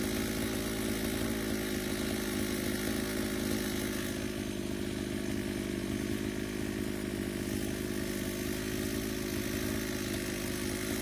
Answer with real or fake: real